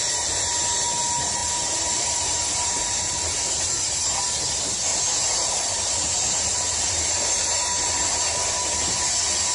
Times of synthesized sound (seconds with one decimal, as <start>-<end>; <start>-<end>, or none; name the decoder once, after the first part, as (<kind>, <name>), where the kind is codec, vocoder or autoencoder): 1.4-3.7 (vocoder, BigVGAN v2); 4.9-7.1